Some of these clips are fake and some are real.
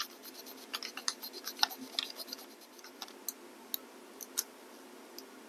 real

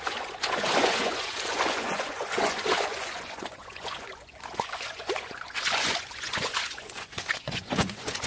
fake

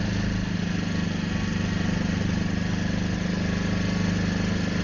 real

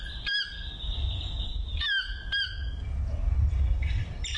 real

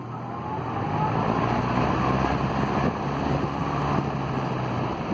real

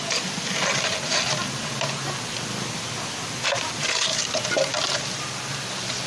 real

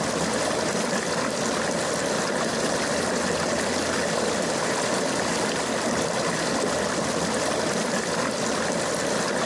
real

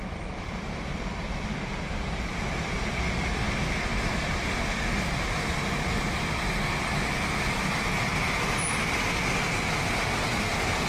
real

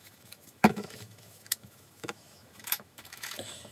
fake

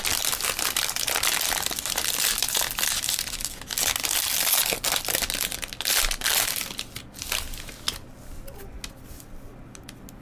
real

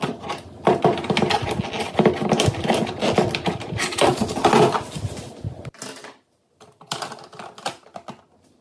real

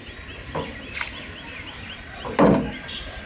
real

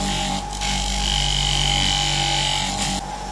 real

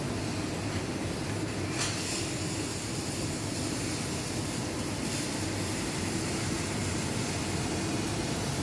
real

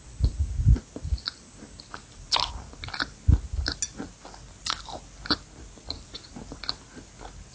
real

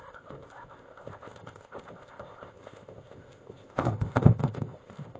fake